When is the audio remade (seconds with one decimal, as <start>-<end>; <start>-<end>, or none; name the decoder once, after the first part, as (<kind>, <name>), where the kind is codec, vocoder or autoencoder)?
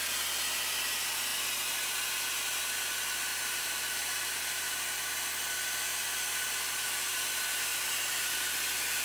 3.3-5.0 (vocoder, BigVGAN v2); 7.7-8.5